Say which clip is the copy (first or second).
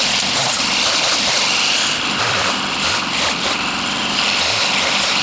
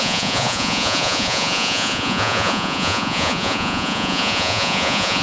second